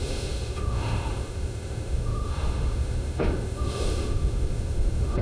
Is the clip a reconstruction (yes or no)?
yes